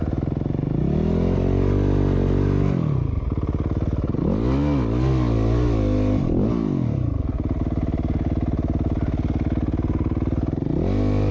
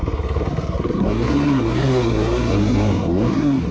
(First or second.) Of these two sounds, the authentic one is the first